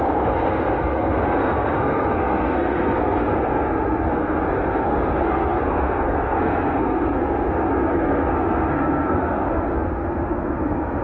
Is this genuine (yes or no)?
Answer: no